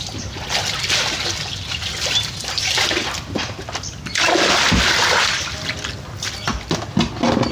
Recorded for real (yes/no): yes